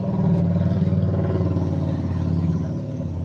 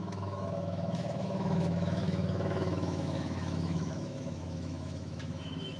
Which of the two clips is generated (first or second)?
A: second